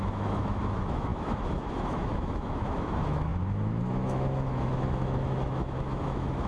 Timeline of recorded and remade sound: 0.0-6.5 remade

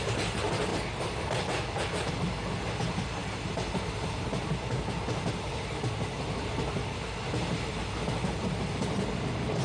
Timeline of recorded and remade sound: 0.0-9.6 recorded

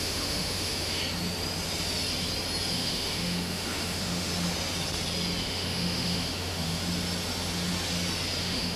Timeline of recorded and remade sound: 0.0-1.0 remade; 1.0-2.7 recorded; 2.7-4.3 remade; 4.3-5.4 recorded; 5.4-6.8 remade; 6.8-8.4 recorded; 8.4-8.8 remade